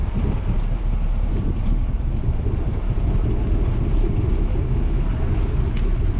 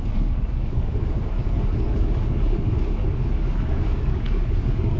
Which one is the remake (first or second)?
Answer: second